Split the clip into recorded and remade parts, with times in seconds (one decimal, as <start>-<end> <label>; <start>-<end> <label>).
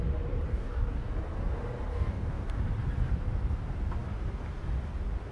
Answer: 0.0-0.5 recorded; 0.5-1.1 remade; 1.1-1.9 recorded; 1.9-2.6 remade; 2.6-5.3 recorded